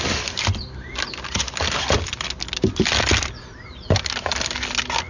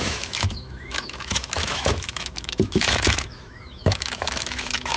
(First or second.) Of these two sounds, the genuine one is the first